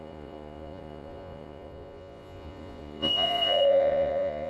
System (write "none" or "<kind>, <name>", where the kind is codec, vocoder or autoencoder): vocoder, Vocos